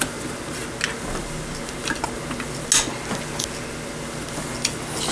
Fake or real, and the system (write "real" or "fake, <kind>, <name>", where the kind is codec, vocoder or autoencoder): real